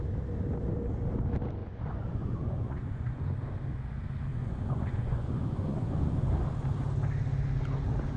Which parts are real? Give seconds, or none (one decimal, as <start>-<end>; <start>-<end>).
0.0-1.6; 3.2-4.3; 6.3-8.2

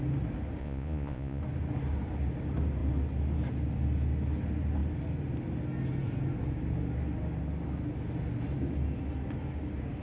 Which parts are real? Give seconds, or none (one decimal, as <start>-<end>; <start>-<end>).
0.0-0.6; 1.4-10.0